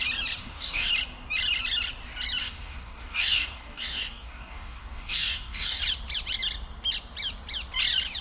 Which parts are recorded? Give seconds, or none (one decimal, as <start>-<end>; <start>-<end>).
0.0-0.4; 0.9-2.4; 5.8-8.2